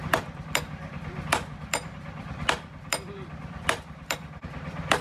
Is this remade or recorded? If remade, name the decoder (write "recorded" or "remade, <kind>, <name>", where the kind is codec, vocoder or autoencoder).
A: remade, vocoder, BigVGAN v2